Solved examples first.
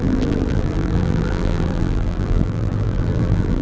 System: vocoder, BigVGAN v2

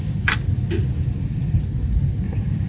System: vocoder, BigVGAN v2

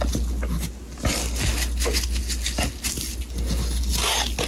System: none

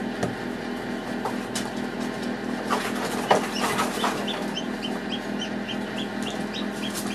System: none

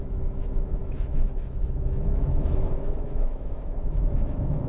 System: autoencoder, DAC-VAE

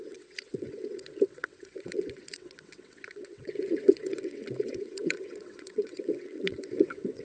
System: vocoder, WaveNeXt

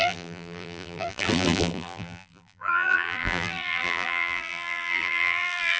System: vocoder, BigVGAN v2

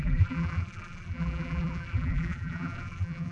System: vocoder, BigVGAN v2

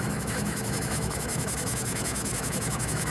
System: autoencoder, DAC-VAE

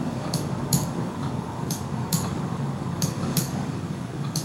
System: codec, DAC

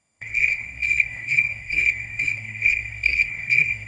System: codec, SNAC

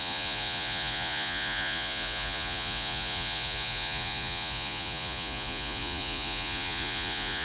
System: vocoder, Vocos